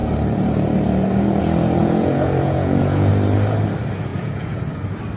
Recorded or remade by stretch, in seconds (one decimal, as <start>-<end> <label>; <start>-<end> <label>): 0.0-1.8 recorded; 1.8-3.1 remade; 3.1-4.1 recorded; 4.1-4.6 remade; 4.6-5.2 recorded